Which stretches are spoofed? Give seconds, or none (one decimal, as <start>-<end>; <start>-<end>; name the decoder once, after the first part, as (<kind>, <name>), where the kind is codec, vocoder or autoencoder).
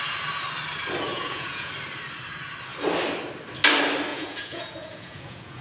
1.1-1.7 (vocoder, Vocos); 4.1-5.6